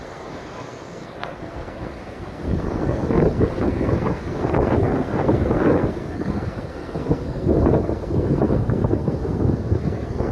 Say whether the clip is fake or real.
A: fake